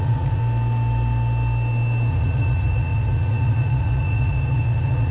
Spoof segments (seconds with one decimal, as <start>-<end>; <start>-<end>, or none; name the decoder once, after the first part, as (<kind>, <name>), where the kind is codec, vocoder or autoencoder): 0.0-0.4 (vocoder, Vocos); 2.1-5.1